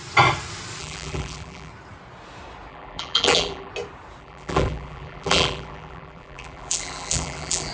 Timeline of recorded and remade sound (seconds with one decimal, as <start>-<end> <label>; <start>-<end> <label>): 0.0-0.8 recorded; 0.8-1.7 remade; 1.7-2.7 recorded; 2.7-3.7 remade; 3.7-4.2 recorded; 4.2-7.7 remade